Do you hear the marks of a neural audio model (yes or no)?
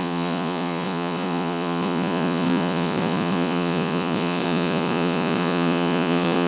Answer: yes